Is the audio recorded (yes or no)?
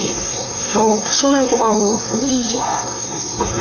no